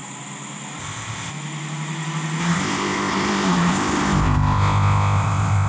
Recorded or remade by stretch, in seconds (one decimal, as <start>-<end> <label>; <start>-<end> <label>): 0.0-0.8 recorded; 0.8-1.3 remade; 1.3-2.4 recorded; 2.4-5.7 remade